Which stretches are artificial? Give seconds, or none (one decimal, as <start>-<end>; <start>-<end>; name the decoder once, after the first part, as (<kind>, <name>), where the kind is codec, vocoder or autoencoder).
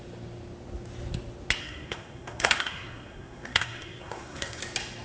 1.6-4.6 (codec, SNAC)